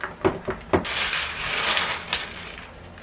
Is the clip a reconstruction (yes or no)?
no